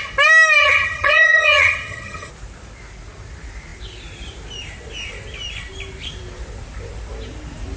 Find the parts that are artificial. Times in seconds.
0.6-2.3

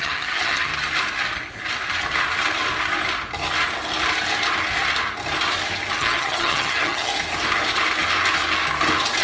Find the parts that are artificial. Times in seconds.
0.0-0.7; 6.0-7.1